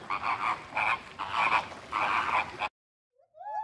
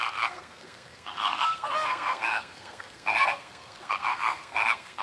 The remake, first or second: second